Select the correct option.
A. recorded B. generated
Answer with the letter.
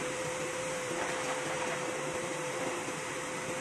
B